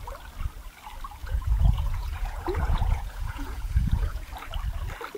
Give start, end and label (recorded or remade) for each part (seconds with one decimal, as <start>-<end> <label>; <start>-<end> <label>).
0.0-1.2 recorded; 1.2-4.3 remade; 4.3-5.2 recorded